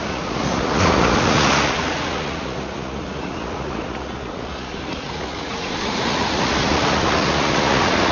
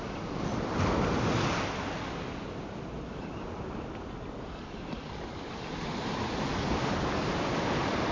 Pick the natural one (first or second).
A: second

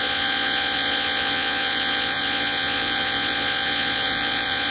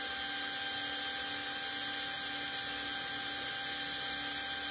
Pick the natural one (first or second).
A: second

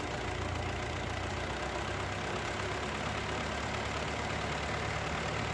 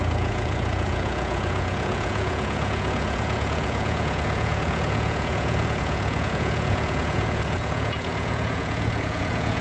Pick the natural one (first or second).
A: first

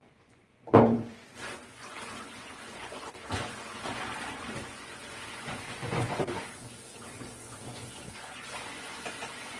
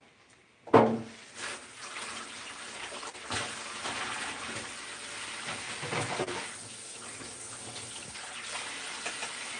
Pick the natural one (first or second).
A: second